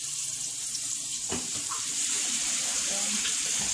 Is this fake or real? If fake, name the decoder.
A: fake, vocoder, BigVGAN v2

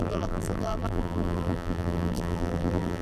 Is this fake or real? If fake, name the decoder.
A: fake, vocoder, BigVGAN v2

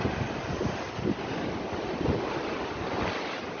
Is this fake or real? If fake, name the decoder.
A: fake, vocoder, BigVGAN v2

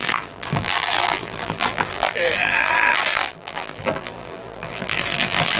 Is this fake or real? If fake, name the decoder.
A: fake, vocoder, BigVGAN v2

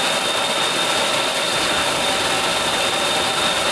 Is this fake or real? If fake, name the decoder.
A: real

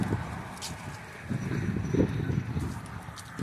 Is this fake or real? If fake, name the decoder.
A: real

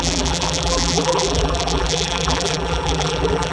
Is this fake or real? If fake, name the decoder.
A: fake, vocoder, BigVGAN v2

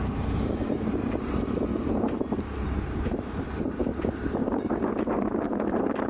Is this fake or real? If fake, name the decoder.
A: fake, vocoder, BigVGAN v2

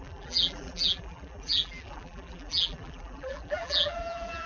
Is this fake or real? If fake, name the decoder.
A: fake, vocoder, BigVGAN v2